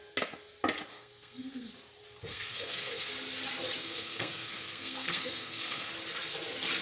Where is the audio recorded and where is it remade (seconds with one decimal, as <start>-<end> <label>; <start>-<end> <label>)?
0.0-0.9 recorded; 0.9-1.7 remade; 1.7-2.3 recorded; 2.3-3.1 remade; 3.1-3.8 recorded; 3.8-5.9 remade; 5.9-6.8 recorded